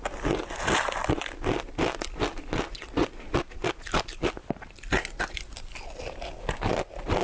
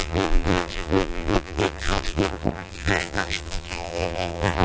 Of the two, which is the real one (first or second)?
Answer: first